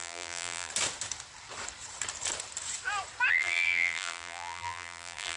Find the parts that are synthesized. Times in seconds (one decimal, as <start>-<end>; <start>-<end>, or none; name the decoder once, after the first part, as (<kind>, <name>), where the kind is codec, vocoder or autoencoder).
0.0-0.7 (vocoder, BigVGAN v2); 3.3-5.4

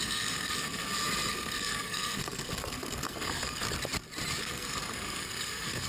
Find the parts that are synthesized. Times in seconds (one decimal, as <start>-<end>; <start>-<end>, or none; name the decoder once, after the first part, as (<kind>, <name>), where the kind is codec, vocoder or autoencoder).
0.0-0.8 (codec, SNAC); 1.3-3.6; 4.4-5.9

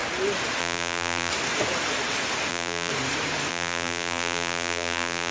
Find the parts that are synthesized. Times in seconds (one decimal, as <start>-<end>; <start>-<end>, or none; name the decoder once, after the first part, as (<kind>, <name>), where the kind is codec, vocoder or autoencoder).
0.6-1.3 (vocoder, BigVGAN v2); 2.5-2.9; 3.5-5.3

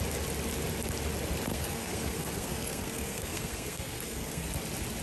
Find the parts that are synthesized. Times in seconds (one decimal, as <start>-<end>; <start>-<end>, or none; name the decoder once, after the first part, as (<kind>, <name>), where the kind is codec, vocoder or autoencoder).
1.5-4.5 (codec, SNAC)

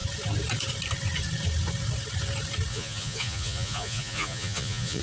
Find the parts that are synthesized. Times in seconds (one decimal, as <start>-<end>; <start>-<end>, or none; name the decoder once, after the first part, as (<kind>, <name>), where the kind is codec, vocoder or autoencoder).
2.7-5.0 (vocoder, Vocos)

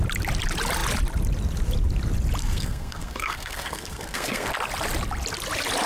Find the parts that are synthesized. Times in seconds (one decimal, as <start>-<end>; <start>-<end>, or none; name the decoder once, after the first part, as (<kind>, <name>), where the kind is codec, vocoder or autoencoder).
2.4-4.5 (codec, SNAC)

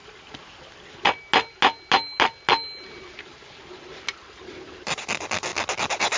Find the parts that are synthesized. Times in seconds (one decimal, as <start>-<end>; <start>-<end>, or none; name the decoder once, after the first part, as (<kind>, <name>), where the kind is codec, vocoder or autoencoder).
none

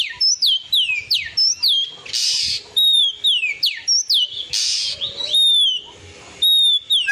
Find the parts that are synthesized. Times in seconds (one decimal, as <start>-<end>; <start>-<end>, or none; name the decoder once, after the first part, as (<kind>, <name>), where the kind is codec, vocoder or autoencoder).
2.2-3.0 (vocoder, BigVGAN v2)